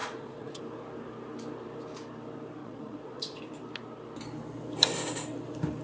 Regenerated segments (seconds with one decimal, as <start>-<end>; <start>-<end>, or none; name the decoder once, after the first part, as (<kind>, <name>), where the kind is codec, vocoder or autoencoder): 0.0-0.6 (vocoder, Vocos); 2.6-3.4